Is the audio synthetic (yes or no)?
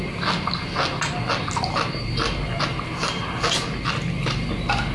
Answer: no